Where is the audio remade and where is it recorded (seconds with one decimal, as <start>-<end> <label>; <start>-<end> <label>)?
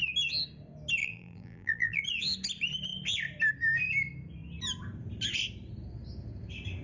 0.0-1.0 recorded; 1.0-2.0 remade; 2.0-6.8 recorded